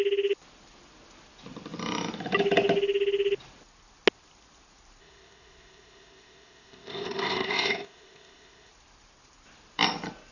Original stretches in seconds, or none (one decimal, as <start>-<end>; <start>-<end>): 0.0-5.0; 8.7-10.3